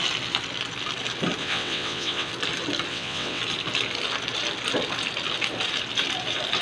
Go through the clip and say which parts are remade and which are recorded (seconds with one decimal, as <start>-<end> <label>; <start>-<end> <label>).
0.0-1.4 recorded; 1.4-2.3 remade; 2.3-2.9 recorded; 2.9-3.4 remade; 3.4-6.6 recorded